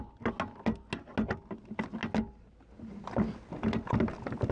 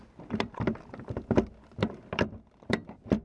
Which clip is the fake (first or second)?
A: second